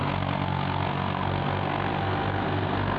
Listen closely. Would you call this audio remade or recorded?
remade